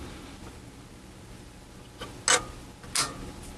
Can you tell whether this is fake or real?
real